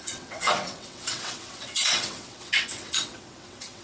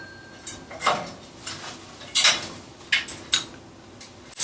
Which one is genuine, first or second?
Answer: second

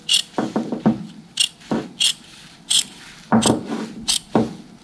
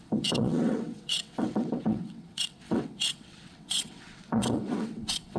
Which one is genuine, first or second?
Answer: first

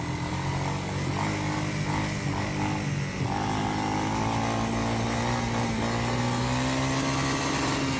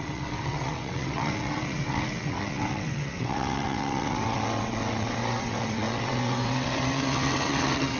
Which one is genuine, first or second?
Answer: first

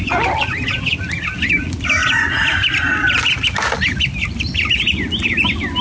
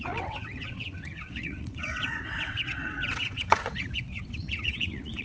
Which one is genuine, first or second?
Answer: first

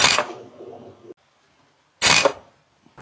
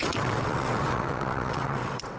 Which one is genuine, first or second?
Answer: first